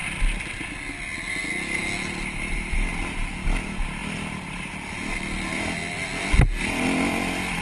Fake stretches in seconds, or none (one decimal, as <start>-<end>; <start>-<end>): none

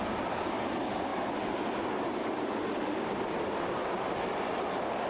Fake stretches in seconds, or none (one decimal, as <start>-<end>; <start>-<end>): none

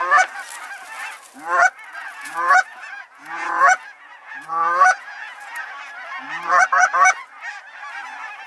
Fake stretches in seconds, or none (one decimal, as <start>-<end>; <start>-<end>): 2.0-5.5

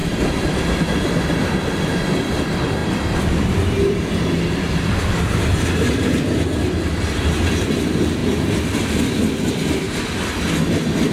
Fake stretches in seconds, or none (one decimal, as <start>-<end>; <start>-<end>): 0.0-11.1

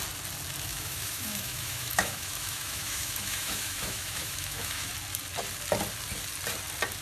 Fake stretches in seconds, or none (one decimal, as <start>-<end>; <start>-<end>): 0.7-4.9

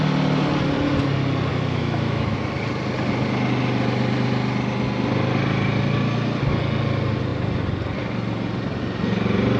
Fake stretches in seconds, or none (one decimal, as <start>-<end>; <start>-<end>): 1.5-2.4

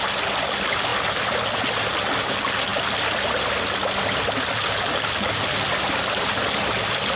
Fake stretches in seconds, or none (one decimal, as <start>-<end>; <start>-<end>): none